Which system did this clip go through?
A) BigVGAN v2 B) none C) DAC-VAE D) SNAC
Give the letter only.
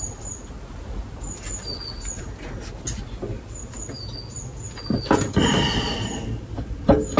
B